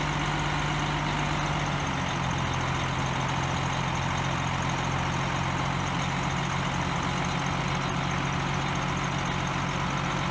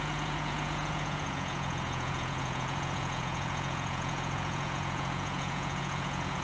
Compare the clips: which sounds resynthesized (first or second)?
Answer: second